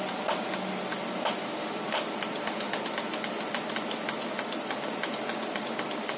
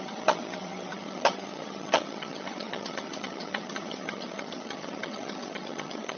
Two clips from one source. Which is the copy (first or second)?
second